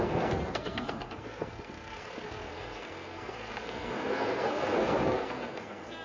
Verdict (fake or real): fake